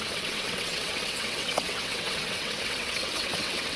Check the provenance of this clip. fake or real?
fake